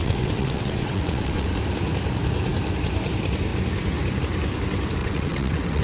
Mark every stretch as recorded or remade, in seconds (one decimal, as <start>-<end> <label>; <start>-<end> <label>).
0.0-1.5 remade; 1.5-5.0 recorded; 5.0-5.8 remade